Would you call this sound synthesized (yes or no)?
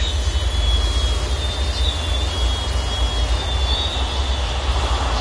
no